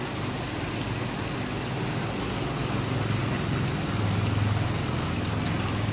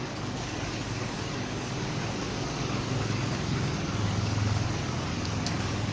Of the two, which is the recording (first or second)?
first